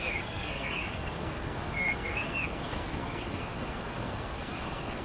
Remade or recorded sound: remade